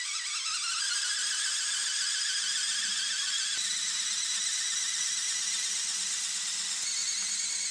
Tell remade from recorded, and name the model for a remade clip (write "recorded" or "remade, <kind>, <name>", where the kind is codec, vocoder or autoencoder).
recorded